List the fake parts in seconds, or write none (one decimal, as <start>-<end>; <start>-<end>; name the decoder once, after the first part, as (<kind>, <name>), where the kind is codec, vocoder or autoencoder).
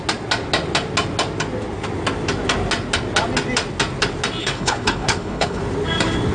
4.4-5.6 (codec, HILCodec)